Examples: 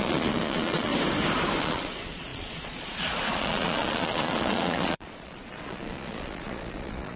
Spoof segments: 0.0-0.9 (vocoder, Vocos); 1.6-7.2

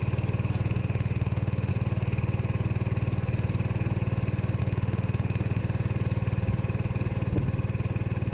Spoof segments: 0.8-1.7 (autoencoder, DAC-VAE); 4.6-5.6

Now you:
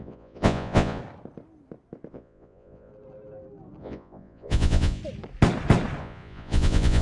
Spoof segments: 0.0-1.0 (vocoder, Vocos); 2.1-2.9; 3.8-5.0; 6.0-7.0